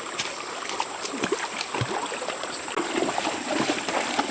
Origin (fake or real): real